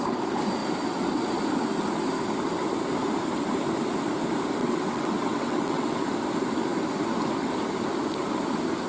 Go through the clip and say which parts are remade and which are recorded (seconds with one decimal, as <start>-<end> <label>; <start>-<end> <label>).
0.0-4.6 recorded; 4.6-6.0 remade; 6.0-8.9 recorded